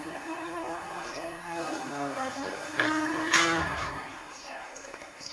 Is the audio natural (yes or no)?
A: no